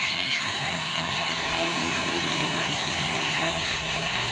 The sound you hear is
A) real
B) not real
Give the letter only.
B